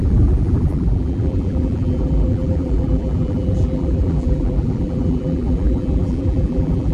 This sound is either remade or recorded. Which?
remade